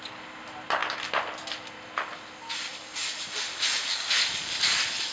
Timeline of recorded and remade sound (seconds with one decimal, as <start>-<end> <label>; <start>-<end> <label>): 0.0-5.1 recorded